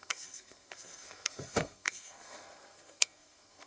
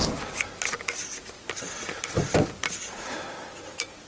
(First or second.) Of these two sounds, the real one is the second